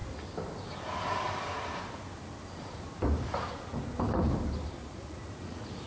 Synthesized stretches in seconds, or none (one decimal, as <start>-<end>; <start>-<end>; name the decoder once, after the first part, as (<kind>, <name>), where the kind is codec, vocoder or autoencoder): 4.8-5.9 (vocoder, Vocos)